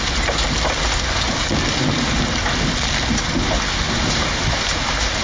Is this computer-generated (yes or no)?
no